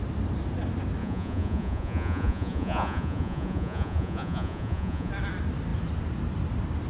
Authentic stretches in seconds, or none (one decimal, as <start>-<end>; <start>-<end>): 0.0-1.0; 5.1-6.9